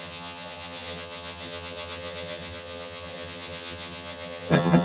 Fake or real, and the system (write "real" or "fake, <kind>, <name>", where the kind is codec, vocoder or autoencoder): fake, vocoder, HiFi-GAN